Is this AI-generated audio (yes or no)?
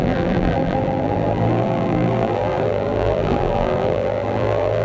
yes